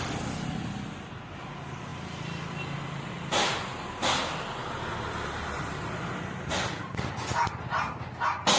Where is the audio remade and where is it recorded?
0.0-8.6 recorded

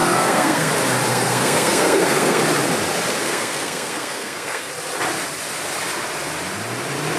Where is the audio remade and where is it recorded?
0.0-0.7 remade; 0.7-1.1 recorded; 1.1-2.4 remade; 2.4-3.2 recorded; 3.2-4.7 remade; 4.7-7.2 recorded